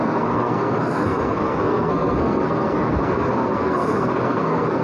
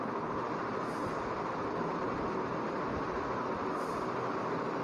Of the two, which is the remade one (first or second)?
first